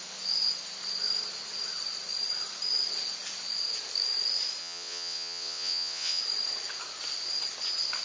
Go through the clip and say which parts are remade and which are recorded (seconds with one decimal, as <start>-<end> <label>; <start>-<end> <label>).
0.0-4.6 recorded; 4.6-6.2 remade; 6.2-8.0 recorded